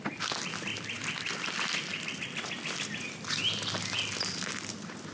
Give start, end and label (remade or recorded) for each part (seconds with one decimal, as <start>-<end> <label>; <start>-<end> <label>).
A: 0.0-5.1 recorded

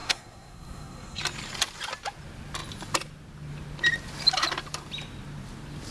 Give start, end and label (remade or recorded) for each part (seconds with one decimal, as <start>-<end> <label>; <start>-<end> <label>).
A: 0.0-1.2 remade; 1.2-5.9 recorded

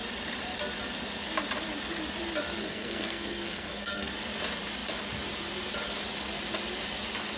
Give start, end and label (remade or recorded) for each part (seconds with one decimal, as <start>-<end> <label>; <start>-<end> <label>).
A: 0.0-2.6 recorded; 2.6-4.1 remade; 4.1-7.4 recorded

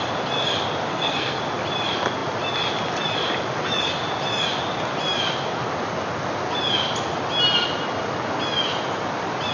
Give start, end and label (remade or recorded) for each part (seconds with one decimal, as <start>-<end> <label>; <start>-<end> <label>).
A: 0.0-0.9 recorded; 0.9-1.4 remade; 1.4-9.5 recorded

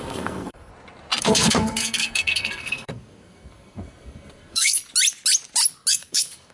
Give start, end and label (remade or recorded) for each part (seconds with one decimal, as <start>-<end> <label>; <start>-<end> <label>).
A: 0.0-0.7 remade; 0.7-1.2 recorded; 1.2-4.8 remade; 4.8-5.9 recorded; 5.9-6.5 remade